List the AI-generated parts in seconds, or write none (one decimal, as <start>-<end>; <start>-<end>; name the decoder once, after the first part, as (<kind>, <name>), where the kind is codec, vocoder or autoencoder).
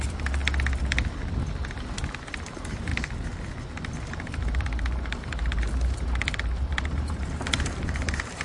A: 0.0-0.4 (vocoder, BigVGAN v2); 2.3-2.9; 4.1-8.4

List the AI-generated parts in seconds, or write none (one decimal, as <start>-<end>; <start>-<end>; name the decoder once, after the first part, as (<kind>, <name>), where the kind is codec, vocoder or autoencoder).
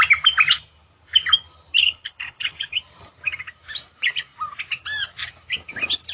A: 1.8-2.8 (codec, HILCodec)